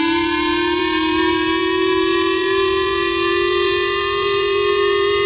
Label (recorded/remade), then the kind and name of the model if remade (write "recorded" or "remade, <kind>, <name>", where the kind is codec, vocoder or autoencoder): remade, vocoder, BigVGAN v2